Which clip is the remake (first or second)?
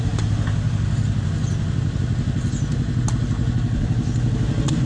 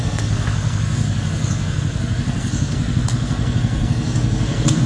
second